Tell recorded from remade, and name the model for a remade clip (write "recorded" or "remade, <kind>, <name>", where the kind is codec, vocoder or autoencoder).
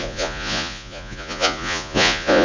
remade, vocoder, Vocos